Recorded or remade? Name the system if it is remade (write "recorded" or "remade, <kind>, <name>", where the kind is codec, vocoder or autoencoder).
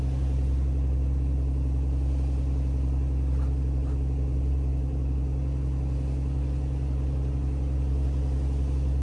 recorded